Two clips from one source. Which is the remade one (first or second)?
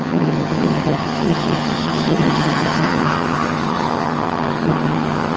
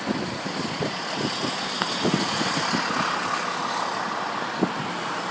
first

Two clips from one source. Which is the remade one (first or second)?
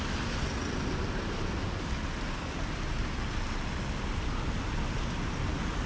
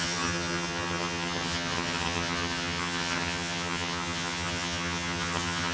second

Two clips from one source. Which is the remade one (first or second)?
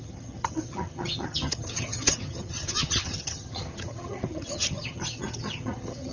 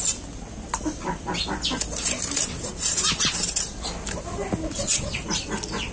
first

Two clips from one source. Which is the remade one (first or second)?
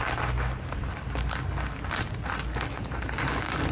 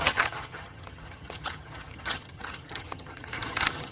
second